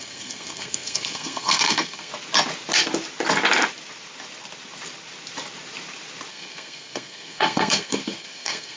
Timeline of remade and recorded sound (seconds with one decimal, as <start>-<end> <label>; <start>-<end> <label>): 0.0-2.1 remade; 2.1-6.3 recorded; 6.3-8.8 remade